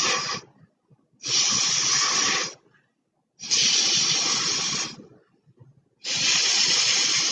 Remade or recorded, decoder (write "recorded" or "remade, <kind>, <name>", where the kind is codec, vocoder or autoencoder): recorded